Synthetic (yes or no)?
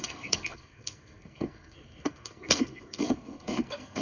yes